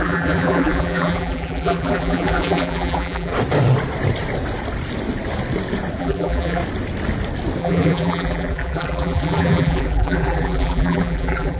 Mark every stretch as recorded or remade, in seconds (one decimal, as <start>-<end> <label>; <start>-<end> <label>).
0.0-3.3 remade; 3.3-6.0 recorded; 6.0-6.6 remade; 6.6-7.6 recorded; 7.6-11.6 remade